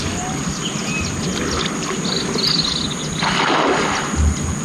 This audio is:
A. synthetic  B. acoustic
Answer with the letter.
B